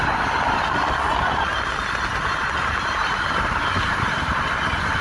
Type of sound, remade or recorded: recorded